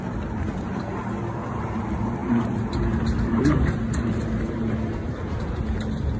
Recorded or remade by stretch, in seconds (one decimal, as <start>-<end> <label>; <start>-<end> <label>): 0.0-6.2 recorded